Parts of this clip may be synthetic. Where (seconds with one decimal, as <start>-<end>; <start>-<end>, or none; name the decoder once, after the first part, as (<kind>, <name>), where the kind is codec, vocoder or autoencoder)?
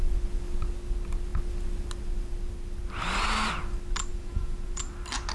4.1-4.8 (vocoder, Vocos)